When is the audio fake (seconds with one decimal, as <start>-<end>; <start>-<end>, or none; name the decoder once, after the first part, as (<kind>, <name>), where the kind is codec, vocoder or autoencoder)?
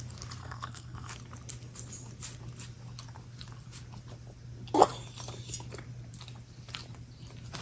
0.4-1.1 (codec, SNAC)